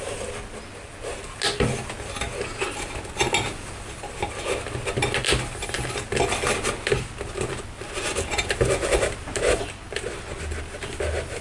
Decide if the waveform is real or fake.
real